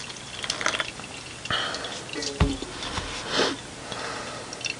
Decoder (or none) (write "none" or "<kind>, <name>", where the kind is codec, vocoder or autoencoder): none